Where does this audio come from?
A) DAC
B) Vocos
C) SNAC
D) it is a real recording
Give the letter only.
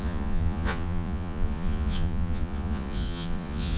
B